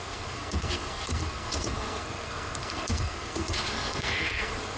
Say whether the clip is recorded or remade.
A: remade